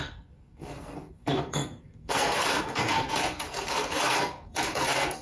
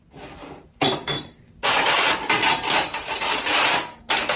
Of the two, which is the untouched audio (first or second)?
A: second